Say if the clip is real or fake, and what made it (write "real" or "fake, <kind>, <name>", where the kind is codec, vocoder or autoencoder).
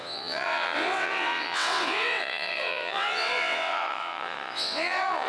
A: fake, vocoder, WaveNeXt